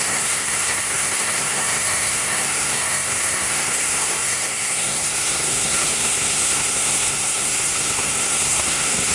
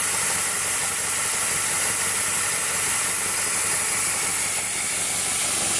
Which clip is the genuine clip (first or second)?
second